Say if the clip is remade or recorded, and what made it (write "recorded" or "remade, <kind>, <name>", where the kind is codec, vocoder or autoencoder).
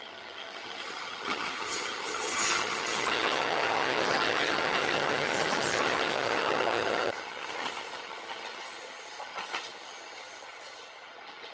remade, vocoder, HiFi-GAN